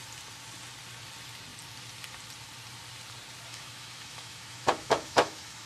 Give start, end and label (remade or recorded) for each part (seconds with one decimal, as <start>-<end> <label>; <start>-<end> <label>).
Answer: 0.0-3.5 recorded; 3.5-5.7 remade